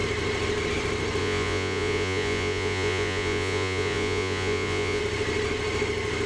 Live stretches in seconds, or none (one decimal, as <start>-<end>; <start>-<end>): 0.0-1.2; 5.0-6.3

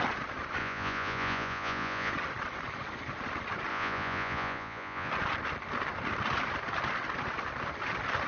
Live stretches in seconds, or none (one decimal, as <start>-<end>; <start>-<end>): 0.0-0.6; 2.1-3.7; 5.1-8.3